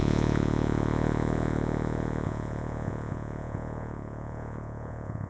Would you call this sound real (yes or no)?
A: no